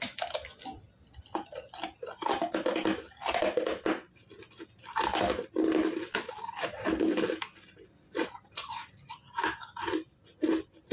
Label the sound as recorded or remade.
recorded